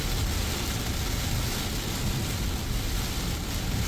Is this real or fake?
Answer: real